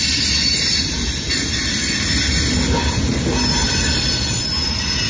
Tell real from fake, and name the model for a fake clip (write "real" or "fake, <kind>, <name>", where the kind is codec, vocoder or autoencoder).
real